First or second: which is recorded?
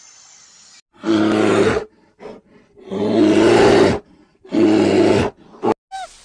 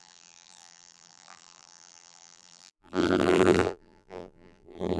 first